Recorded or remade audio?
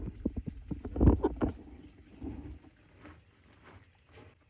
recorded